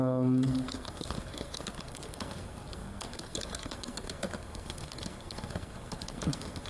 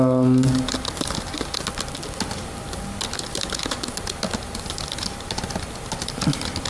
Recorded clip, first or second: second